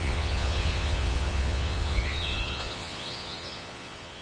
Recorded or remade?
remade